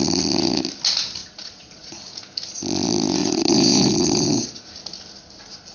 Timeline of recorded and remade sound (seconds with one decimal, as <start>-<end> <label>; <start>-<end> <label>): 0.0-1.2 recorded; 1.2-2.0 remade; 2.0-3.2 recorded; 3.2-4.6 remade; 4.6-5.7 recorded